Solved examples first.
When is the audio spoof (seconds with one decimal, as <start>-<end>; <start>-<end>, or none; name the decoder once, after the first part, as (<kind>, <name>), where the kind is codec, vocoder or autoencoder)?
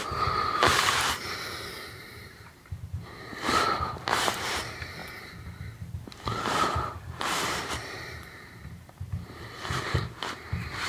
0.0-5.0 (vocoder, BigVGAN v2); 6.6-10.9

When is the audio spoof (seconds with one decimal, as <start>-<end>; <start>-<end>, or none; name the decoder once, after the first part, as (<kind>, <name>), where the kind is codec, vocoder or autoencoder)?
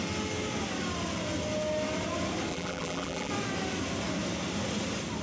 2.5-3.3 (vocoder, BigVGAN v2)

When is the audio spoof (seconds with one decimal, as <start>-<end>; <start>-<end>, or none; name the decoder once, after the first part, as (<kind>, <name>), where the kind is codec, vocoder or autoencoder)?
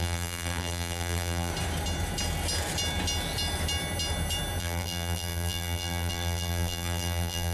0.0-1.5 (vocoder, BigVGAN v2); 4.6-7.5